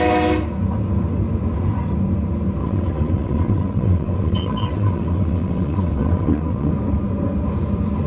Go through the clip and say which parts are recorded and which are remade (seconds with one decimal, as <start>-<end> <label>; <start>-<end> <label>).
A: 0.0-2.6 recorded; 2.6-6.7 remade; 6.7-8.1 recorded